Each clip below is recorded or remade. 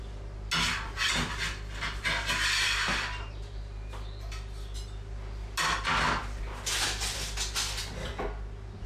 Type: recorded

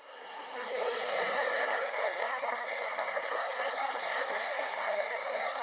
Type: remade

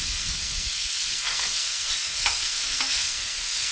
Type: remade